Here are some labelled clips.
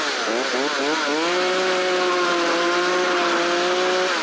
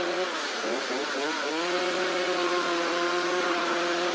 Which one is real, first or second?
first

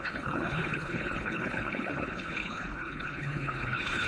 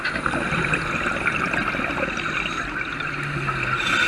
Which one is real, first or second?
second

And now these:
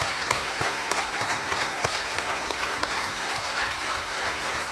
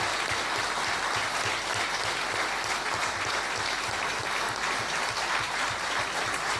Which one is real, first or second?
second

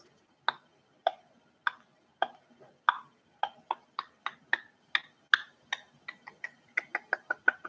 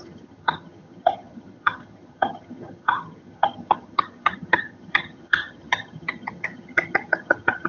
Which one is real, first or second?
first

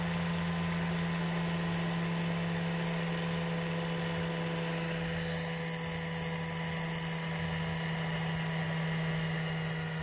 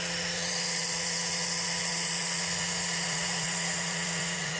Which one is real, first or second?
first